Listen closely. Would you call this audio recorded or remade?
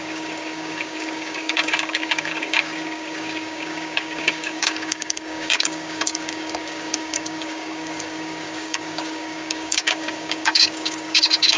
remade